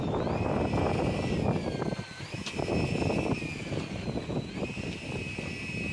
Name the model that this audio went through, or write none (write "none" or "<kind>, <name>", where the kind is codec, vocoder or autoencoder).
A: none